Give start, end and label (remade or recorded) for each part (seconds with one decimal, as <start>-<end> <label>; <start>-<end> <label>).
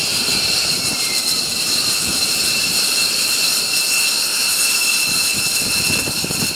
0.0-3.9 remade; 3.9-6.5 recorded